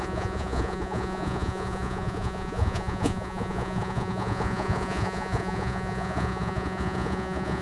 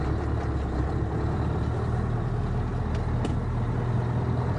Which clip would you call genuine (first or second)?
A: second